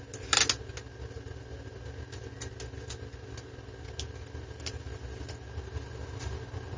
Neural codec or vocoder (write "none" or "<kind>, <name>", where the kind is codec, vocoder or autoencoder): none